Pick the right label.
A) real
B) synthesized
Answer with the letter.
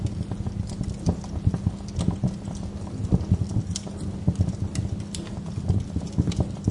A